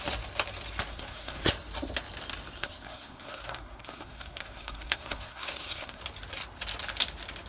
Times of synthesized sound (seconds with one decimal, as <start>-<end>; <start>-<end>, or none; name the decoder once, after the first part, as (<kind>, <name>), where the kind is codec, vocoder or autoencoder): 0.9-1.5 (codec, SNAC); 2.6-6.0